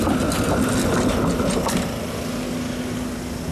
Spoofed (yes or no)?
no